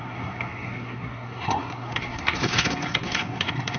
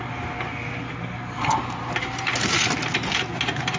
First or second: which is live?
second